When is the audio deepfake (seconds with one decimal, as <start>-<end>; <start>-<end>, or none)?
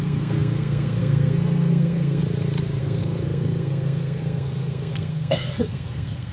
0.0-2.2; 2.8-6.3